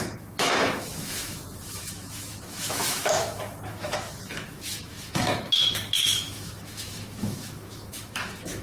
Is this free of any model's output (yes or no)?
no